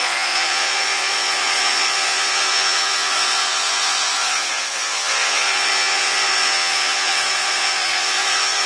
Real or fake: fake